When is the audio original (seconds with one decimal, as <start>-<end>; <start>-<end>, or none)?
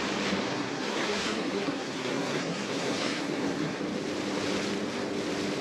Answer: 0.0-0.4; 3.8-5.6